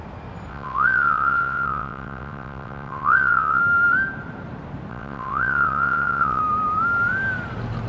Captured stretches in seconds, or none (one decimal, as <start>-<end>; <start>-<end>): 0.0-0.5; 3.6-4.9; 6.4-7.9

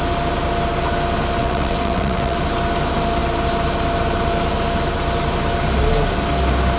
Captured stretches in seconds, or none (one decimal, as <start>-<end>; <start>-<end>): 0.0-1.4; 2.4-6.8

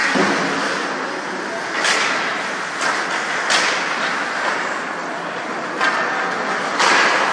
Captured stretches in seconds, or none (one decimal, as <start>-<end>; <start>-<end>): 0.0-7.3

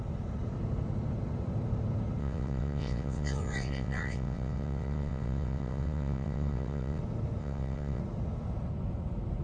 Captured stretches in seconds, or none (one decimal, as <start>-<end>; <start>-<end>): 0.0-2.2; 7.0-7.4; 8.0-9.4

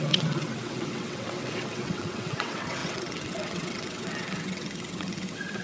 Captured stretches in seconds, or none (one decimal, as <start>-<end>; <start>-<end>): none